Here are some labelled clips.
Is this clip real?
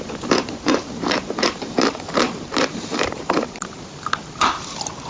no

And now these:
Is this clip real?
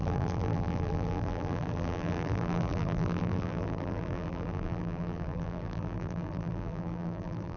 no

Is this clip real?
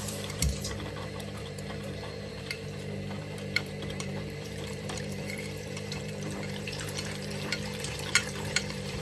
no